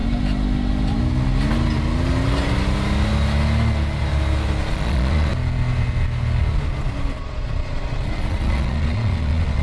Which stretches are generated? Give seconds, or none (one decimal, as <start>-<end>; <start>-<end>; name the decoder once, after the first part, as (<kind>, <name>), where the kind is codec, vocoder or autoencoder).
4.7-5.3 (vocoder, Vocos); 7.2-9.6

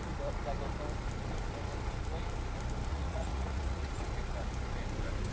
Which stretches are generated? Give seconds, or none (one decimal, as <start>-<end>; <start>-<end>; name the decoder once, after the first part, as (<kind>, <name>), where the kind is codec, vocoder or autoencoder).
2.9-3.9 (vocoder, Vocos)

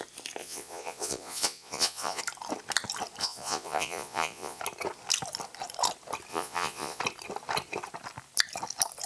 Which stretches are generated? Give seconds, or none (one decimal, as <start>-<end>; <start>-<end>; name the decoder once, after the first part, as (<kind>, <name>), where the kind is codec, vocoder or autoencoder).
0.4-2.2 (vocoder, Vocos); 3.2-4.6; 6.3-7.0

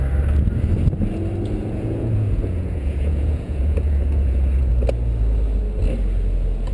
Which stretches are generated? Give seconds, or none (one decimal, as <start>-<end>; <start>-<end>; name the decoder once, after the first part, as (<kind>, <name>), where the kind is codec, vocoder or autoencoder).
1.6-4.7 (vocoder, Vocos)

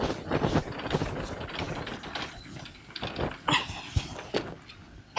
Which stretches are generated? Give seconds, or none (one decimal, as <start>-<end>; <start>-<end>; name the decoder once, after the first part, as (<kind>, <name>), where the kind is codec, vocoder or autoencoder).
none

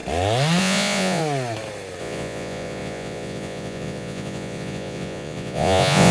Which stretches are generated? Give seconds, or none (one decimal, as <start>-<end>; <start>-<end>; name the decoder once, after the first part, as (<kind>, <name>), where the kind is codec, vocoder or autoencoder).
0.6-1.2 (vocoder, Vocos); 2.0-6.1